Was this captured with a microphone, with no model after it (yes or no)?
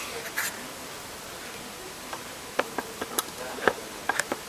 yes